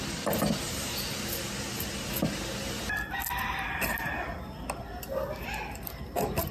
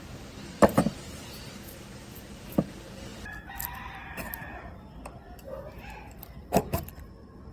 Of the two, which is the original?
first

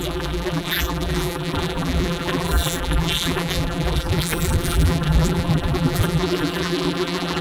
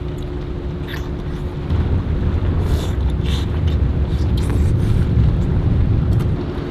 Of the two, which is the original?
second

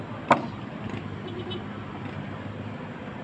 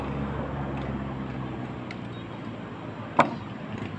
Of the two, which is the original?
second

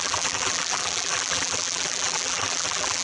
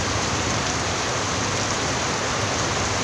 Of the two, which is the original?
second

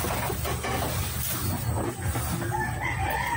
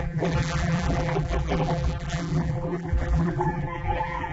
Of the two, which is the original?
first